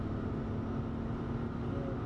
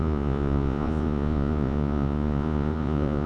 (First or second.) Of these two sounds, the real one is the first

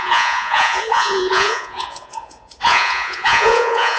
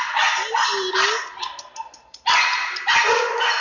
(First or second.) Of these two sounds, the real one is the second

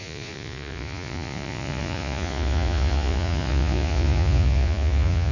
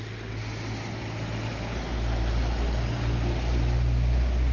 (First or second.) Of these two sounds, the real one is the second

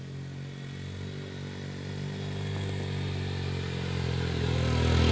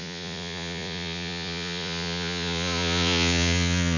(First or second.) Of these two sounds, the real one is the first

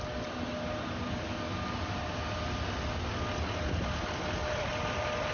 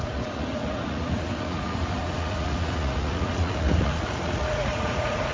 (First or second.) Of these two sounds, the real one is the first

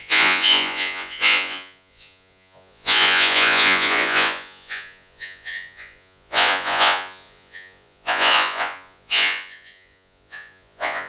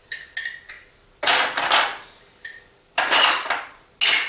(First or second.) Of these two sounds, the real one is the second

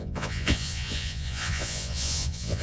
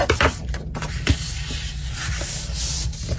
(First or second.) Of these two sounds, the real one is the second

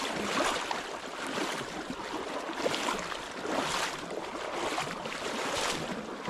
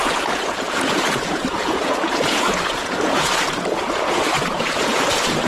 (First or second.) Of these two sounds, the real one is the first